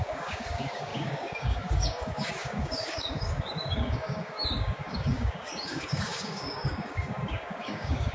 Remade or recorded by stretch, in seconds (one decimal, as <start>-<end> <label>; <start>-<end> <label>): 0.0-8.1 remade